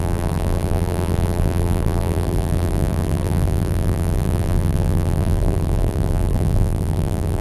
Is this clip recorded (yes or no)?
no